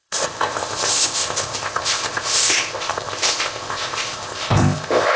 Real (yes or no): no